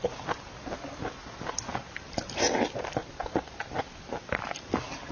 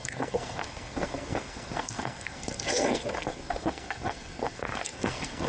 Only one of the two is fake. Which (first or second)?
second